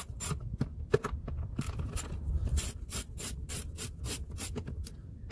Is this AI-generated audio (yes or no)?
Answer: no